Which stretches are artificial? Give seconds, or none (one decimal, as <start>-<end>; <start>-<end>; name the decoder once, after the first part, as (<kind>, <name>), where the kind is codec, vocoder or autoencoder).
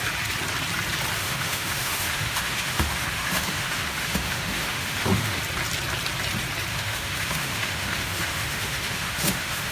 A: 1.2-5.4 (autoencoder, DAC-VAE); 6.7-9.7